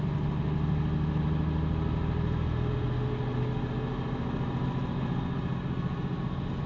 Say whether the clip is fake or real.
real